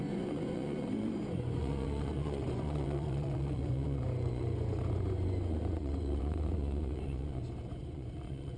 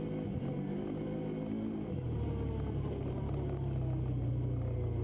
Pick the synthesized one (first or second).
first